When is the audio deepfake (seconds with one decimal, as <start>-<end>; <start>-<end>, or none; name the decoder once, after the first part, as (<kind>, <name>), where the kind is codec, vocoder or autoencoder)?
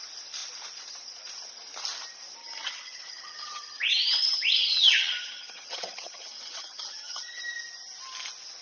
2.4-7.4 (vocoder, HiFi-GAN)